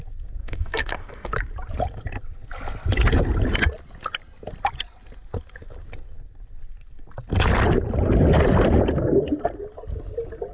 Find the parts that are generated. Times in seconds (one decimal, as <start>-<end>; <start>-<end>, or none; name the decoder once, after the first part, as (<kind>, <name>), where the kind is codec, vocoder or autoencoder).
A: 0.4-1.3 (codec, SNAC)

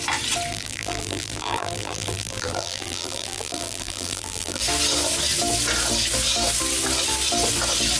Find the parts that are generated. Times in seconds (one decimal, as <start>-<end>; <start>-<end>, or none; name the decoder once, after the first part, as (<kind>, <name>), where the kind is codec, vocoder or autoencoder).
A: 0.5-4.6 (vocoder, BigVGAN v2)

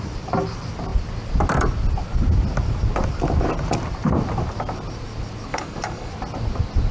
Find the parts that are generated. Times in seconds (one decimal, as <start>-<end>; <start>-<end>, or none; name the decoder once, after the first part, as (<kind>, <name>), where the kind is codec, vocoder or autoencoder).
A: 5.5-6.1 (codec, DAC)

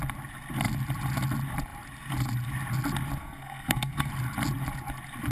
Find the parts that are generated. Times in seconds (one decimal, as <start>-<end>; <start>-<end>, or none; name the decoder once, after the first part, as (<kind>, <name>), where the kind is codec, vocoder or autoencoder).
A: 3.2-4.1 (codec, SNAC)

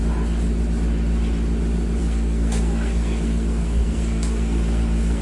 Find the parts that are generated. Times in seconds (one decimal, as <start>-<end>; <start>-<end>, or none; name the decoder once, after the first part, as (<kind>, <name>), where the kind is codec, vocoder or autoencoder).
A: 2.0-5.2 (codec, SNAC)